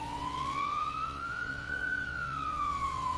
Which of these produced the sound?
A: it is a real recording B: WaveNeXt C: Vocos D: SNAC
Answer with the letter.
B